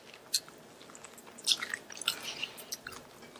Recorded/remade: recorded